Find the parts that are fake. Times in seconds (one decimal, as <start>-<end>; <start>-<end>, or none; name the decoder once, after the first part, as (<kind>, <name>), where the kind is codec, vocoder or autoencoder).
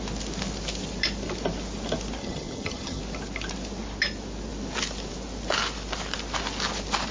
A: 2.2-3.0 (vocoder, HiFi-GAN)